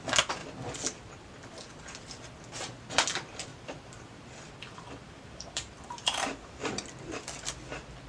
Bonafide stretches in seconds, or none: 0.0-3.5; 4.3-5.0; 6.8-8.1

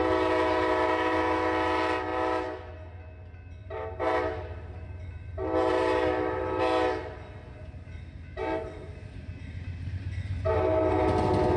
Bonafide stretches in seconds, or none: 0.0-3.6; 6.6-8.6; 10.1-11.6

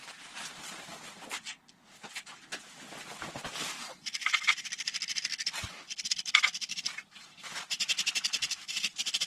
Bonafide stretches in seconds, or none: none